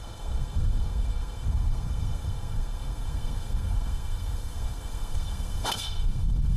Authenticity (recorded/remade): remade